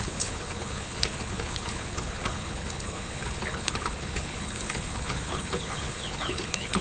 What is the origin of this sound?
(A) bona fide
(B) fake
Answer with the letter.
B